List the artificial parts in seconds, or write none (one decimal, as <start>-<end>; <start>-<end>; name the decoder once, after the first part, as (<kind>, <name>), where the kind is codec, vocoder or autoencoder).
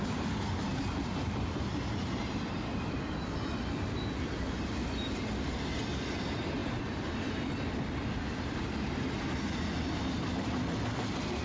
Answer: none